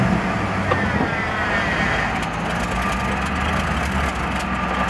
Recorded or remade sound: recorded